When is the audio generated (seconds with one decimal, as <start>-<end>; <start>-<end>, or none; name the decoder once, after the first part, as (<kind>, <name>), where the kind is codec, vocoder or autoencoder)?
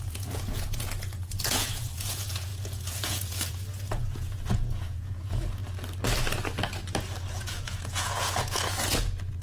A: 0.0-5.6 (vocoder, Vocos); 7.3-9.4